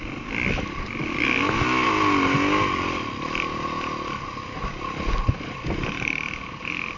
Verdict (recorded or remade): recorded